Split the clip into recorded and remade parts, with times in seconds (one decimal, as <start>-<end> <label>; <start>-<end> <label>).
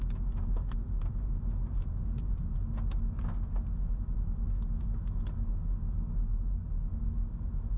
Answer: 0.0-7.8 recorded